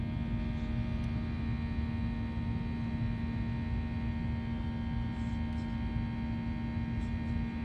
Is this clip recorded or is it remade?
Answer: recorded